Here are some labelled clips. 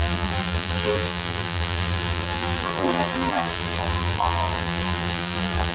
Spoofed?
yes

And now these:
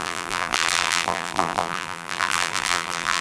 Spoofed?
yes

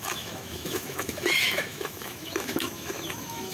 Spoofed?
yes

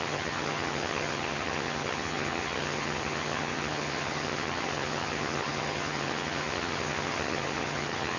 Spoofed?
yes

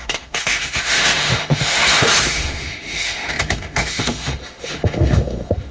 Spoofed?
yes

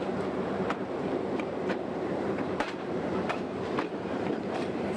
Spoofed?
yes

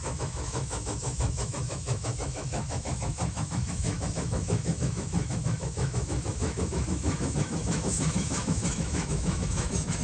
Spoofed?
yes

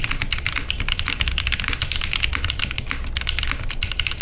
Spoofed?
no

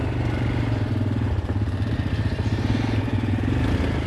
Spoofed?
no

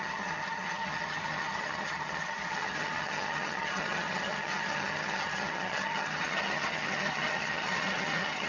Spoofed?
yes